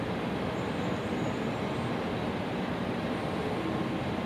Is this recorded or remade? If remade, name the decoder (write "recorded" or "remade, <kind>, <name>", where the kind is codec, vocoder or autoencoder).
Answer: recorded